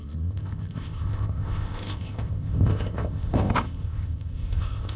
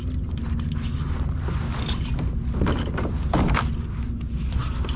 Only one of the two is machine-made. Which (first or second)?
first